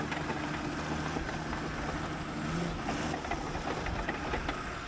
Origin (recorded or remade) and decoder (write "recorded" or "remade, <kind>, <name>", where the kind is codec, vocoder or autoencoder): recorded